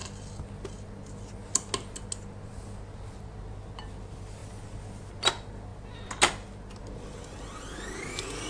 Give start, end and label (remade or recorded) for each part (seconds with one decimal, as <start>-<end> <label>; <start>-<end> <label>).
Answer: 0.0-8.5 recorded